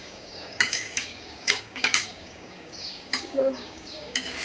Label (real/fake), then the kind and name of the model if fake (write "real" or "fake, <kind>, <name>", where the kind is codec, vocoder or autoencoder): fake, codec, DAC